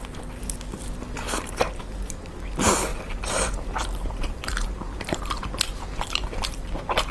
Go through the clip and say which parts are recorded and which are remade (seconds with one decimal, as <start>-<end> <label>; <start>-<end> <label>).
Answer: 0.0-2.9 recorded; 2.9-5.2 remade; 5.2-7.1 recorded